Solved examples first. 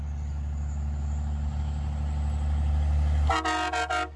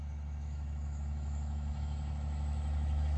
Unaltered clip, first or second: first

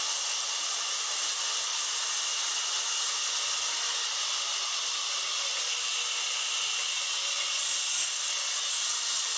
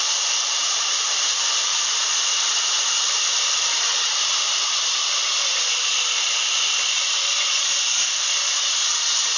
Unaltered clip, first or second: first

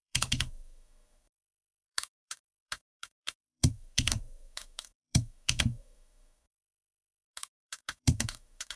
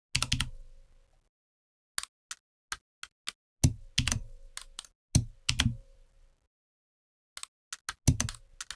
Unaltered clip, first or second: second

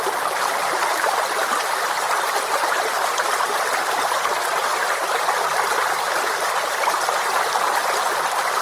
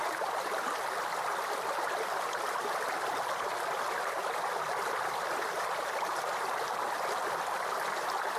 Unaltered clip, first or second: second